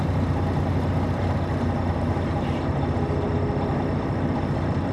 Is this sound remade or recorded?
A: recorded